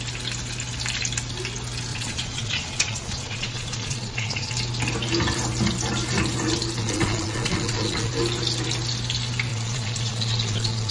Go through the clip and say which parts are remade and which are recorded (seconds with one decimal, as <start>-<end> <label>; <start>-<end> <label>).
0.0-1.9 recorded; 1.9-4.5 remade; 4.5-6.8 recorded; 6.8-8.1 remade; 8.1-9.5 recorded; 9.5-10.9 remade